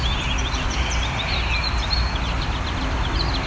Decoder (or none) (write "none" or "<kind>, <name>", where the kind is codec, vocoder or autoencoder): none